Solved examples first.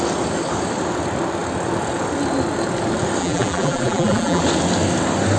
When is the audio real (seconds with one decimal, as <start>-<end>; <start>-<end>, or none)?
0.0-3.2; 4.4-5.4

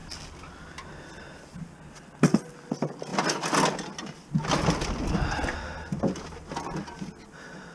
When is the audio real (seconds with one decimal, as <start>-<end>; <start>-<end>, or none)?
0.0-7.7

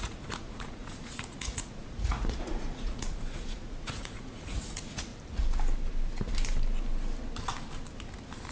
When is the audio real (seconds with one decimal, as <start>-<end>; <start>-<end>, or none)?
5.1-8.5

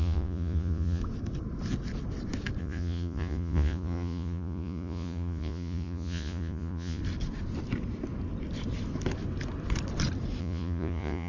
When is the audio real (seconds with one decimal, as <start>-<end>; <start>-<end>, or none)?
1.0-2.6; 7.0-10.4

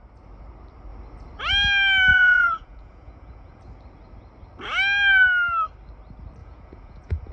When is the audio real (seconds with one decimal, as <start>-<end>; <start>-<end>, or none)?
0.0-2.1; 3.6-6.4

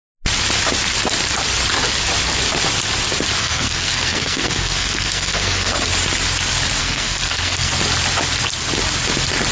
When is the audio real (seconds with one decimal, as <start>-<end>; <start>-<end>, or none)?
0.0-3.4; 5.9-6.8; 7.7-9.5

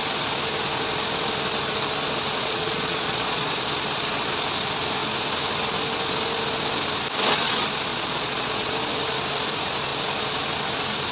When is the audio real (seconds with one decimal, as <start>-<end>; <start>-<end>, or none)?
0.0-2.4; 3.5-7.9; 8.7-11.1